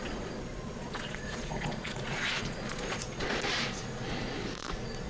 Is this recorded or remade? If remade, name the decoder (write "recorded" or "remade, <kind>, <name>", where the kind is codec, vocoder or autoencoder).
remade, vocoder, Vocos